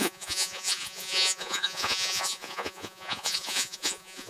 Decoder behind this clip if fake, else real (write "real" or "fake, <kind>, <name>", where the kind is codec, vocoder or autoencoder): fake, vocoder, Vocos